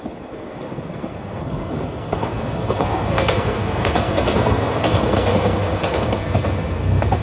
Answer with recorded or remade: remade